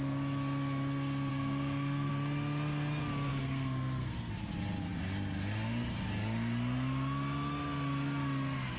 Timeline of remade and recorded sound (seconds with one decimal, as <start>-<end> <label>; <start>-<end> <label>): 0.0-1.3 recorded; 1.3-2.1 remade; 2.1-3.3 recorded; 3.3-4.3 remade; 4.3-8.8 recorded